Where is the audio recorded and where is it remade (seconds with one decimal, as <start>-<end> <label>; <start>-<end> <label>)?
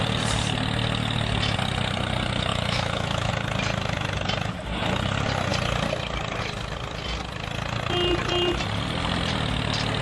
0.0-2.5 recorded; 2.5-3.3 remade; 3.3-10.0 recorded